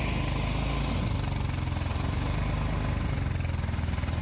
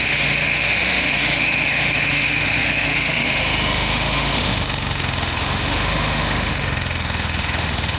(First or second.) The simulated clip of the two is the second